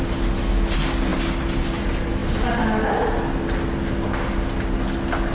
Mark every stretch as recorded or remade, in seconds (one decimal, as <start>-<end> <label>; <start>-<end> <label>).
0.0-5.3 recorded